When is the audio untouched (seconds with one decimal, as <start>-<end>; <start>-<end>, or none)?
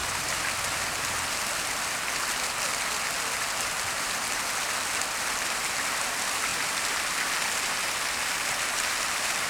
0.0-9.5